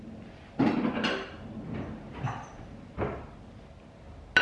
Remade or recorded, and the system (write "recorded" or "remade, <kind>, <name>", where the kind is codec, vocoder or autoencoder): recorded